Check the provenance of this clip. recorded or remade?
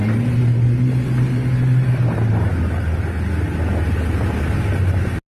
recorded